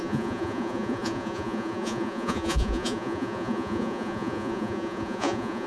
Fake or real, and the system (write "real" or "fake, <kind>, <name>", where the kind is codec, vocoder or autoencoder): fake, vocoder, Vocos